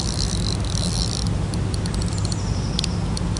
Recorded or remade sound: recorded